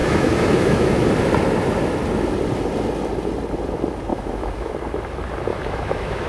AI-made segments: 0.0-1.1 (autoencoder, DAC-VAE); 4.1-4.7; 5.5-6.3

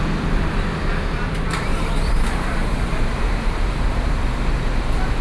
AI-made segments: 1.7-4.4 (vocoder, BigVGAN v2)

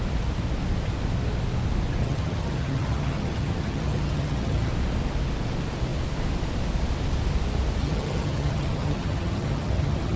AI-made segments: 2.0-4.7 (vocoder, HiFi-GAN); 7.8-10.2

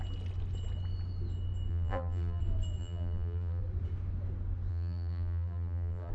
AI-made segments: 1.7-2.4 (vocoder, BigVGAN v2); 2.8-3.6; 4.7-6.1

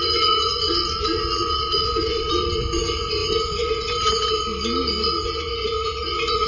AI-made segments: 0.0-4.5 (vocoder, Vocos); 5.2-6.5

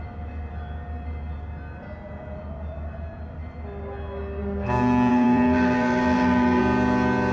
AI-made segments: 5.1-6.6 (vocoder, BigVGAN v2)

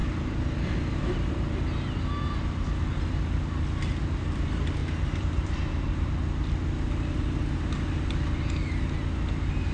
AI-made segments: 4.8-6.2 (vocoder, BigVGAN v2)